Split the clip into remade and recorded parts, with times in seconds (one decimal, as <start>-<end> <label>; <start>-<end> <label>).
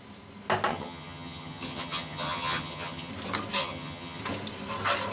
0.0-0.7 recorded; 0.7-3.1 remade; 3.1-3.6 recorded; 3.6-4.2 remade; 4.2-5.1 recorded